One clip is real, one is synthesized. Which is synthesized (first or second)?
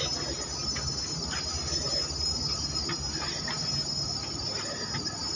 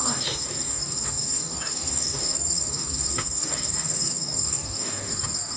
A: second